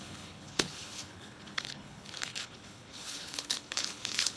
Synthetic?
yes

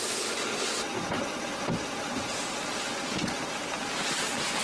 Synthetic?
no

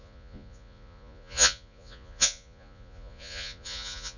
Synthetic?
yes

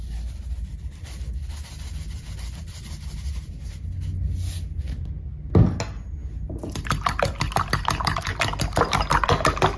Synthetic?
no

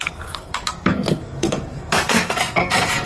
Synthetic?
yes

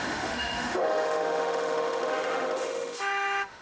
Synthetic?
yes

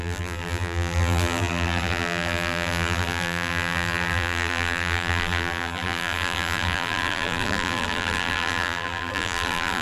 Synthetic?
yes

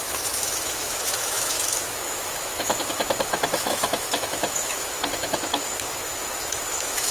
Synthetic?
yes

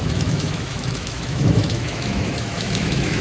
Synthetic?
yes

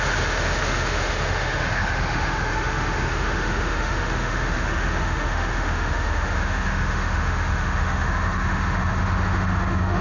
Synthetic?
yes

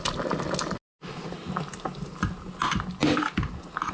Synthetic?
no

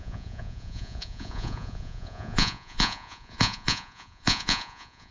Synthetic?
yes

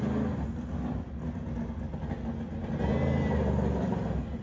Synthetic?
no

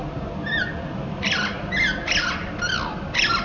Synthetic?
yes